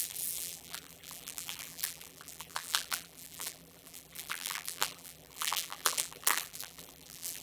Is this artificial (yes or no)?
yes